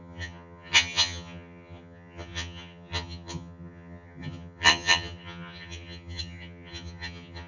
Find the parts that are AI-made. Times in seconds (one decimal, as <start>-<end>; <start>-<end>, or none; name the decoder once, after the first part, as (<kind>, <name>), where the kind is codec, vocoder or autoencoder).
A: 0.0-7.5 (vocoder, HiFi-GAN)